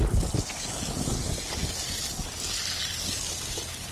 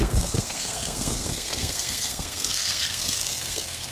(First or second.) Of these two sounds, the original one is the first